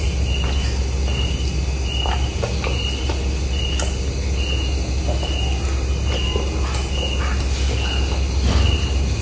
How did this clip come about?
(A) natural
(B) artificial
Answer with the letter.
A